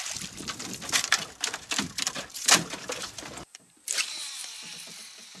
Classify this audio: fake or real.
fake